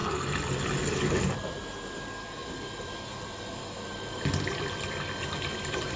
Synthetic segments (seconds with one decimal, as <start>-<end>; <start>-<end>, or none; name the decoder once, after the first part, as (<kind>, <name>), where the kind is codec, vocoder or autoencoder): 0.8-6.0 (vocoder, BigVGAN v2)